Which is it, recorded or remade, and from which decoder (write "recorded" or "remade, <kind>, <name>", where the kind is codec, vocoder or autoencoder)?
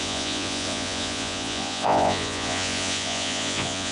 remade, vocoder, Vocos